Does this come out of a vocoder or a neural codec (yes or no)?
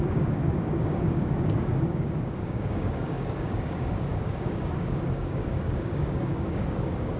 yes